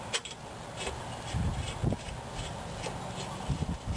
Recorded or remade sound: recorded